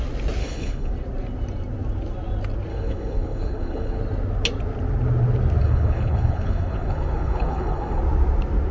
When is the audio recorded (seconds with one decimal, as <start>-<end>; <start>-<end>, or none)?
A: 0.0-0.4; 0.9-2.7; 4.0-5.6; 8.0-8.7